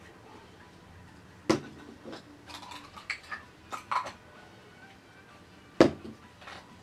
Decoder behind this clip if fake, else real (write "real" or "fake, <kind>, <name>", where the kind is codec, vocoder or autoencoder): real